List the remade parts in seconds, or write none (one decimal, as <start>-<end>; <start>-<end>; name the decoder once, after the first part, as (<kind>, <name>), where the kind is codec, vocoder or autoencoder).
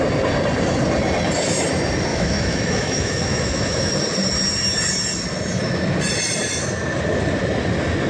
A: 2.1-3.9 (autoencoder, DAC-VAE)